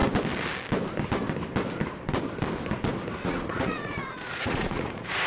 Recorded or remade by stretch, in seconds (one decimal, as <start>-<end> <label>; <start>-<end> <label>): 0.0-3.2 recorded; 3.2-5.3 remade